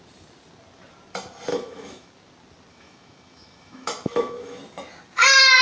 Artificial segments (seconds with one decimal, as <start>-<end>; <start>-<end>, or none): 1.5-2.1; 2.7-4.6

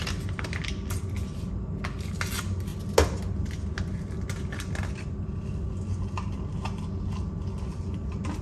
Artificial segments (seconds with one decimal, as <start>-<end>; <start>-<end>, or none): none

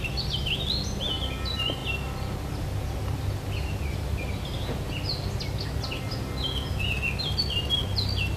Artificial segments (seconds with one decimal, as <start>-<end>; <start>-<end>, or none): none

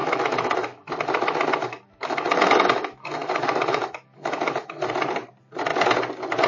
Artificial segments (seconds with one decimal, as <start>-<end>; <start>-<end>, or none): 0.0-0.9; 1.6-4.9

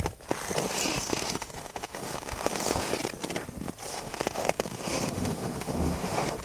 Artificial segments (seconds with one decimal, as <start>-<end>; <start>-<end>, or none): 0.9-2.9; 3.9-6.4

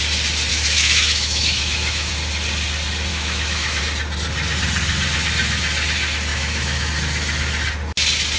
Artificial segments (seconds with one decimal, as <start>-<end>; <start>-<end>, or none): 0.5-2.1; 3.1-3.8; 6.3-6.9